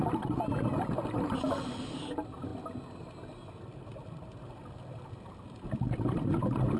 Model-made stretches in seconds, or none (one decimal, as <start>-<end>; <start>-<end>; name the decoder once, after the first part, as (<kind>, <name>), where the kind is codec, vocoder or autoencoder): none